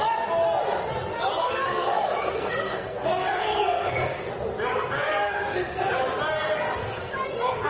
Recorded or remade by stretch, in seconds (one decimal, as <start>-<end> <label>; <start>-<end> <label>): 0.0-1.4 recorded; 1.4-4.3 remade; 4.3-4.7 recorded; 4.7-5.9 remade; 5.9-6.8 recorded; 6.8-7.7 remade